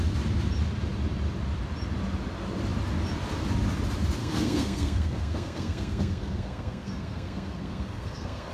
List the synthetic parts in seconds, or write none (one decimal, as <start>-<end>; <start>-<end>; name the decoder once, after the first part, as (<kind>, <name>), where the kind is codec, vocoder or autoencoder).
4.2-8.5 (codec, SNAC)